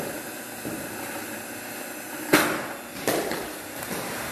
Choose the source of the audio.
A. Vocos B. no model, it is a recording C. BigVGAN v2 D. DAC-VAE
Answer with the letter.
B